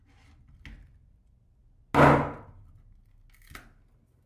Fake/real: real